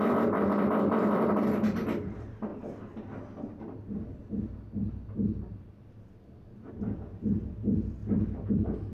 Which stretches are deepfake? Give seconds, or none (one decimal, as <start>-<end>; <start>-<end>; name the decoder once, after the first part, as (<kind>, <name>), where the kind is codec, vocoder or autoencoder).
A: 0.0-2.5 (vocoder, BigVGAN v2); 6.7-8.9